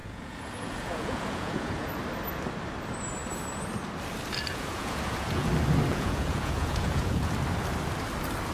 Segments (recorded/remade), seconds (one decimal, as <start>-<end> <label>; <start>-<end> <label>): 0.0-1.9 remade; 1.9-4.5 recorded; 4.5-5.5 remade; 5.5-5.9 recorded; 5.9-7.3 remade; 7.3-8.5 recorded